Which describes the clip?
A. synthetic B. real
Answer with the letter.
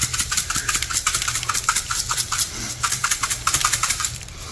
A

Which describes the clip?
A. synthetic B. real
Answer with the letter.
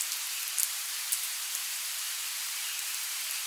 A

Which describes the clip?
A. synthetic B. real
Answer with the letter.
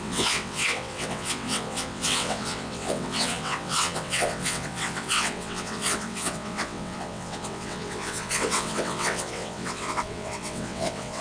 A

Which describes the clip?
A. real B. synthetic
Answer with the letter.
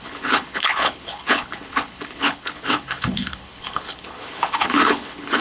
B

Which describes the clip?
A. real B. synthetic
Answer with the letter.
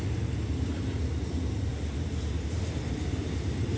A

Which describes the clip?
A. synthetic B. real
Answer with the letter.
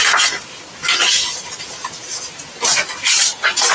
B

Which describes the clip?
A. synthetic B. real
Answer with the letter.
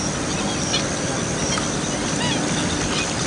B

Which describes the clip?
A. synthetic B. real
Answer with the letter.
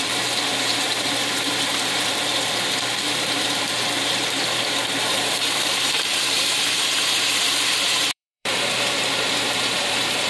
A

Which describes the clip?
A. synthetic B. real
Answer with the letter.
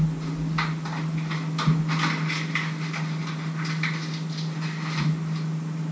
B